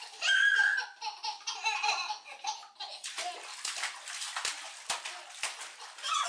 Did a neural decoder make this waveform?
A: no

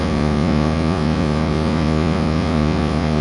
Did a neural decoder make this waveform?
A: yes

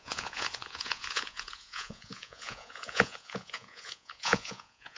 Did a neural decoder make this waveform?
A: yes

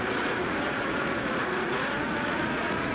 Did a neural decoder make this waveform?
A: yes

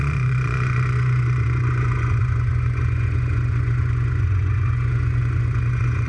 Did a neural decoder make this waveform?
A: yes